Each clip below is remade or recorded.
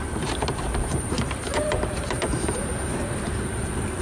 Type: remade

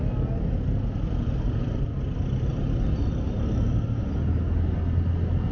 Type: recorded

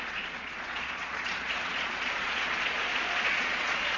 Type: remade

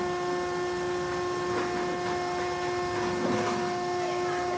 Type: recorded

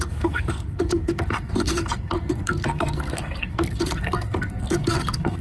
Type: remade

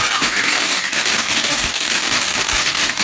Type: remade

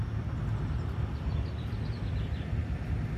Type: recorded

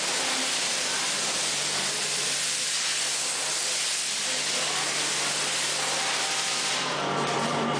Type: recorded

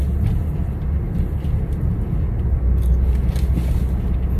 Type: recorded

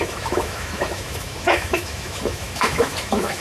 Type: remade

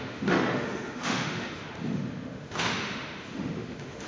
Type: remade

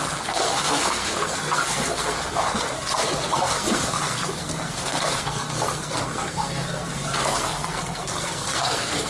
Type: remade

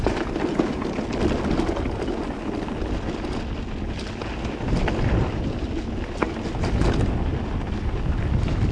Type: recorded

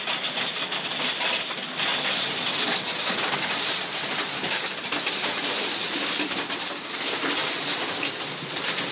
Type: recorded